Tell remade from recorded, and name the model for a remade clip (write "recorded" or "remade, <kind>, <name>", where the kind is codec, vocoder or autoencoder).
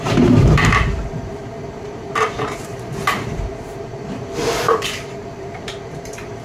remade, vocoder, BigVGAN v2